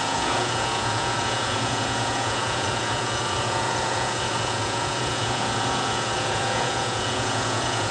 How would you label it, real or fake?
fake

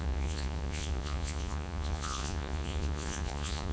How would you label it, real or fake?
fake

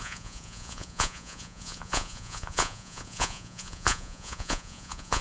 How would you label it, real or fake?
fake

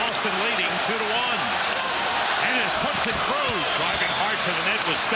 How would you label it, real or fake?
real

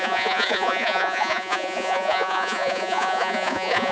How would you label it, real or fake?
fake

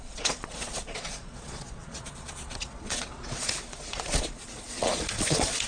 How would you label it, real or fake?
fake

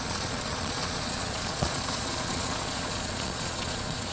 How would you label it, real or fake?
fake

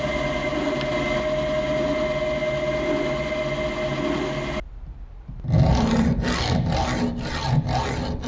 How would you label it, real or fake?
real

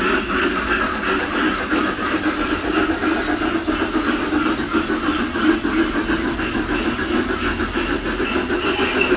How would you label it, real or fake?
real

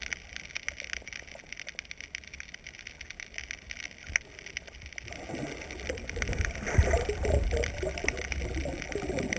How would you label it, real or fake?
real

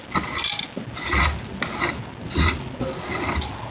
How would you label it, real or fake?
real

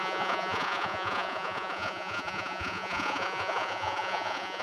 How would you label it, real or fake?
fake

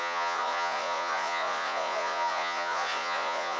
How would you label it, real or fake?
fake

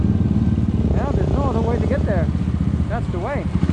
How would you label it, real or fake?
real